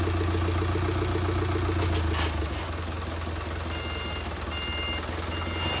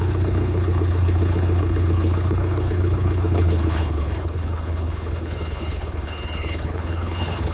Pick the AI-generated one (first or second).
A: second